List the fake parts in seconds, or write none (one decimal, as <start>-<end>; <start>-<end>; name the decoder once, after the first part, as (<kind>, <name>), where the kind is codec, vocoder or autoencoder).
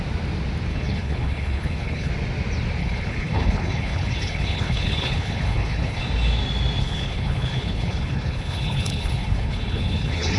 0.7-2.1 (codec, HILCodec); 2.8-6.0; 6.8-10.4